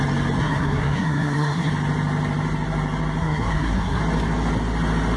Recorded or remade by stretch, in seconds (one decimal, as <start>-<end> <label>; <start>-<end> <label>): 0.0-0.4 recorded; 0.4-1.7 remade; 1.7-3.2 recorded; 3.2-4.0 remade; 4.0-5.2 recorded